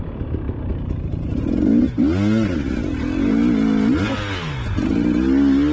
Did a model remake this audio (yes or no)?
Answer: no